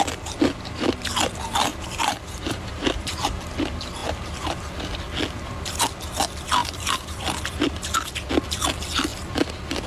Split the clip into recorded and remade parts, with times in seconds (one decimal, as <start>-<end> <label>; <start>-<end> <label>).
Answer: 0.0-1.7 recorded; 1.7-3.4 remade; 3.4-6.6 recorded; 6.6-7.2 remade; 7.2-9.9 recorded